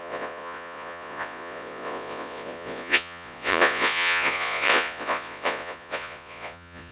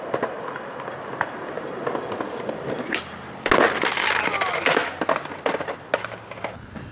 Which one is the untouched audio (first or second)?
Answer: second